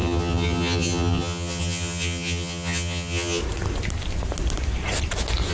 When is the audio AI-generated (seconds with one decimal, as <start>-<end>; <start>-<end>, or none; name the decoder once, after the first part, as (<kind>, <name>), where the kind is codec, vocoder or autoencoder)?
0.0-3.4 (vocoder, HiFi-GAN)